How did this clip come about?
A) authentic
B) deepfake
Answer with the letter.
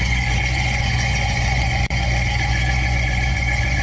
B